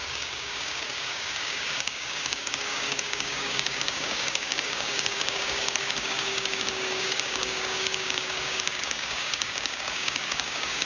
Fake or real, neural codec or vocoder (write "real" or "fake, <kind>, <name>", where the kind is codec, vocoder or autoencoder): fake, codec, DAC